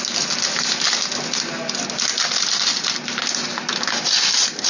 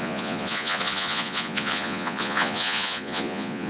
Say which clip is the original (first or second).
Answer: first